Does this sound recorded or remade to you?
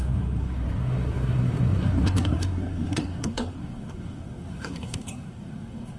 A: remade